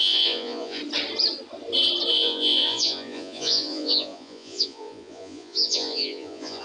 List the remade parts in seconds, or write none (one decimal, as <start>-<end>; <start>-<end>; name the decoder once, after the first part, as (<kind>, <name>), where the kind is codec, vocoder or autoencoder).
0.0-0.8 (vocoder, Vocos); 2.1-6.6